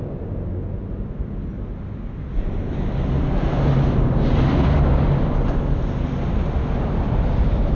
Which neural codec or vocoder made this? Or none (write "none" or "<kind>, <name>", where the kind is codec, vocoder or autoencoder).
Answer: none